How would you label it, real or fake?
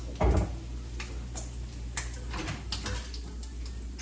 real